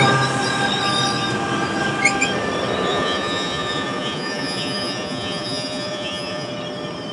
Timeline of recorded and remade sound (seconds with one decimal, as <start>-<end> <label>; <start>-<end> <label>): 0.0-2.9 recorded; 2.9-6.5 remade; 6.5-7.1 recorded

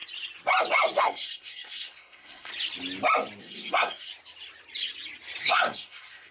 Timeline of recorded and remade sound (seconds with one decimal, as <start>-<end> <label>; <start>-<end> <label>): 0.0-1.0 recorded; 1.0-2.5 remade; 2.5-3.4 recorded; 3.4-4.1 remade; 4.1-5.4 recorded; 5.4-6.3 remade

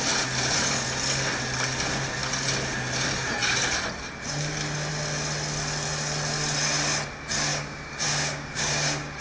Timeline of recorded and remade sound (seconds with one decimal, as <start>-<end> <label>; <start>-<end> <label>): 0.0-7.5 recorded; 7.5-9.2 remade

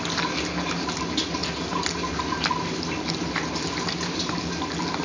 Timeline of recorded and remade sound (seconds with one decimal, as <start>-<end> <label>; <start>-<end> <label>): 0.0-5.0 recorded

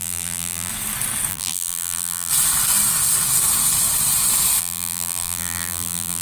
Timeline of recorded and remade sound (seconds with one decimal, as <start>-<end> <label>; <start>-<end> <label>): 0.0-0.7 remade; 0.7-1.3 recorded; 1.3-2.3 remade; 2.3-4.6 recorded; 4.6-6.2 remade

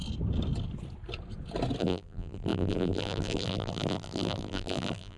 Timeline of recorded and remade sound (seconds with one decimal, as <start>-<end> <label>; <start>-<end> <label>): 0.0-1.8 recorded; 1.8-5.2 remade